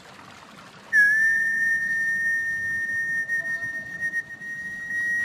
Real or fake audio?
real